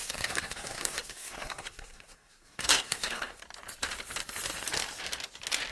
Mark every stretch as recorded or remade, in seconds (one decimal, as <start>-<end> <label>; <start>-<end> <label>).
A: 0.0-3.4 remade; 3.4-5.7 recorded

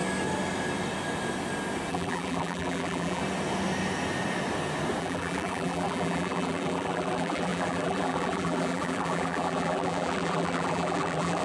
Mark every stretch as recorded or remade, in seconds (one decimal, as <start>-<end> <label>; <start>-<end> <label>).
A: 0.0-1.9 recorded; 1.9-3.2 remade; 3.2-5.0 recorded; 5.0-11.4 remade

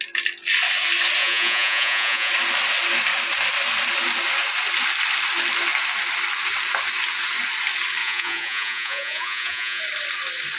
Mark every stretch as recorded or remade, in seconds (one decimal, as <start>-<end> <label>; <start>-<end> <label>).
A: 0.0-1.2 recorded; 1.2-2.3 remade; 2.3-8.0 recorded; 8.0-9.8 remade; 9.8-10.6 recorded

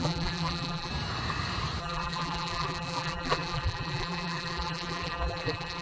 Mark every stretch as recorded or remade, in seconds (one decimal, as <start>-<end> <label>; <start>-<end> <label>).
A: 0.0-0.9 remade; 0.9-1.8 recorded; 1.8-5.8 remade

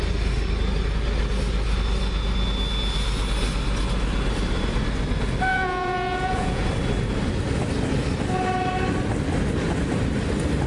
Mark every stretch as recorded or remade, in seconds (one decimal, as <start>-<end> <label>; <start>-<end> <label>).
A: 0.0-5.5 recorded; 5.5-6.6 remade; 6.6-10.7 recorded